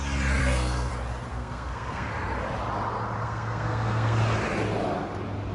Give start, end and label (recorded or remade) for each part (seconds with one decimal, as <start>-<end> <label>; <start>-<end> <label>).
0.0-0.4 recorded; 0.4-0.9 remade; 0.9-1.3 recorded; 1.3-2.1 remade; 2.1-3.2 recorded; 3.2-4.2 remade; 4.2-5.5 recorded